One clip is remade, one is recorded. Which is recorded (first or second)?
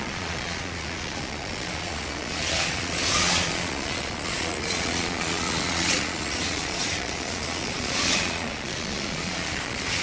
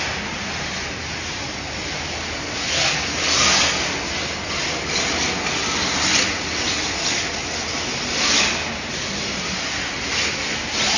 second